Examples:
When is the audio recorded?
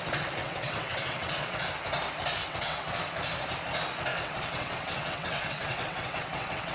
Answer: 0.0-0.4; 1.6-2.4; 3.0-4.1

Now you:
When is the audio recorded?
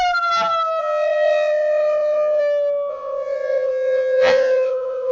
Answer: 0.0-0.8; 2.4-2.9